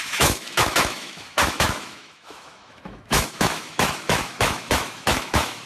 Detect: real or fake fake